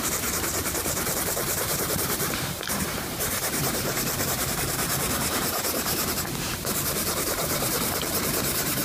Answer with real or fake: fake